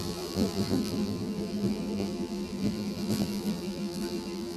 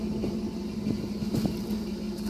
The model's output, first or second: first